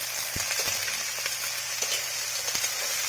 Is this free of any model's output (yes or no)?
yes